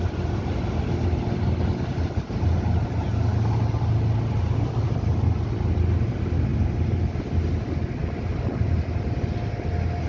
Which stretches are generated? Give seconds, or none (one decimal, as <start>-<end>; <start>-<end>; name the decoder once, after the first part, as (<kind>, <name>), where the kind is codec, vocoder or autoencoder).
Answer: none